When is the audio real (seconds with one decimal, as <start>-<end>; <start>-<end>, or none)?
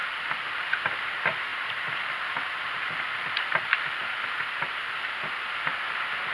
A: 0.0-6.3